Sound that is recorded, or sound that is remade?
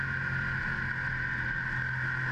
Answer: recorded